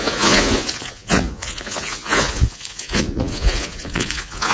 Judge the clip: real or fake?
fake